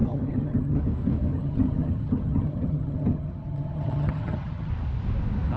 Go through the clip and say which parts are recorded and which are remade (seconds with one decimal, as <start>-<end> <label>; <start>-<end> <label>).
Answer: 0.0-0.8 remade; 0.8-1.3 recorded; 1.3-4.7 remade; 4.7-5.6 recorded